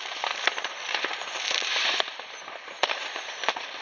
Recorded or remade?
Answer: remade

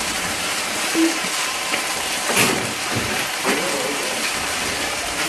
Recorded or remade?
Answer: remade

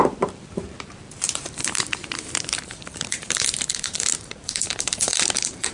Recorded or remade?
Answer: remade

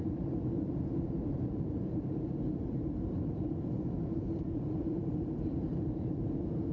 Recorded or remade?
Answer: remade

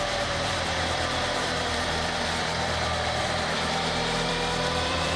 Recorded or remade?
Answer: remade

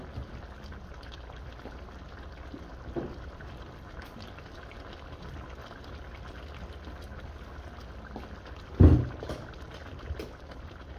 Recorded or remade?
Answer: recorded